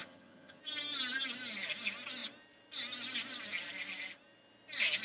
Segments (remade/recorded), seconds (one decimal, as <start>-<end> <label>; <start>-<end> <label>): 0.0-0.6 remade; 0.6-5.0 recorded